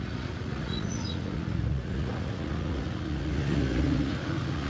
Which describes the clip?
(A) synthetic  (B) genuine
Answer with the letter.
A